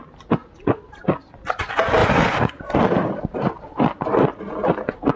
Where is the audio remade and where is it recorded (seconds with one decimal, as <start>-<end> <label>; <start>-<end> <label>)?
0.0-2.0 recorded; 2.0-3.5 remade; 3.5-5.2 recorded